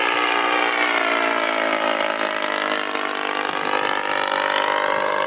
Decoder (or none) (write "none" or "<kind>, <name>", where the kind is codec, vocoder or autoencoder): none